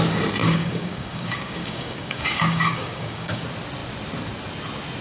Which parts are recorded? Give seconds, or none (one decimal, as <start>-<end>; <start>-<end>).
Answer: 0.0-0.4; 3.4-5.0